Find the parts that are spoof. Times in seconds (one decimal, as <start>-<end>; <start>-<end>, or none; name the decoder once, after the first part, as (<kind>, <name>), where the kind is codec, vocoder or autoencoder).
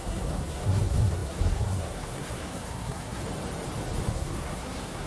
0.0-3.2 (codec, SNAC); 4.1-5.1